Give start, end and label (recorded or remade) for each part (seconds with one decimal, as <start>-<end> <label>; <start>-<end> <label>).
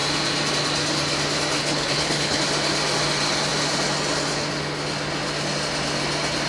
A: 0.0-1.6 recorded; 1.6-2.4 remade; 2.4-6.5 recorded